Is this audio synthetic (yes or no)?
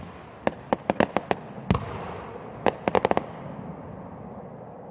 no